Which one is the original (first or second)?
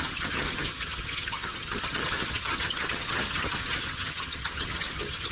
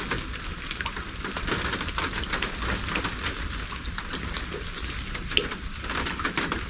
second